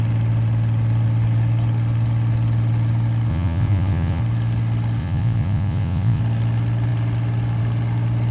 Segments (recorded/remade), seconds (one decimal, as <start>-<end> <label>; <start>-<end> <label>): 0.0-3.3 recorded; 3.3-4.2 remade; 4.2-5.0 recorded; 5.0-6.2 remade; 6.2-8.3 recorded